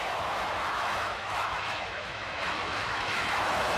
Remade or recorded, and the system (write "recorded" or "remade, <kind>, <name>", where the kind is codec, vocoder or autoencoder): remade, autoencoder, DAC-VAE